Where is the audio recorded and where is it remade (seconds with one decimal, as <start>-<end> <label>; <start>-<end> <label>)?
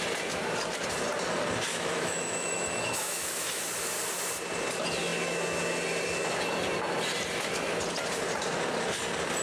0.0-1.7 recorded; 1.7-3.6 remade; 3.6-9.4 recorded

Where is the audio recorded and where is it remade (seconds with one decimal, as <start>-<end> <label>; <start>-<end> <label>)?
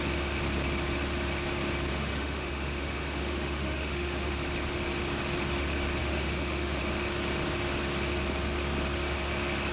0.0-1.9 recorded; 1.9-4.3 remade; 4.3-6.0 recorded; 6.0-6.8 remade; 6.8-9.7 recorded